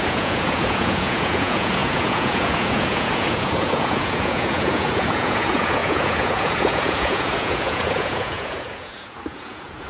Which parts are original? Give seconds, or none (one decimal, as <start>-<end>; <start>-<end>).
none